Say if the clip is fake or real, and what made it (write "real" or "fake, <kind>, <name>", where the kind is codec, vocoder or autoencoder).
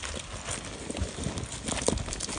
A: real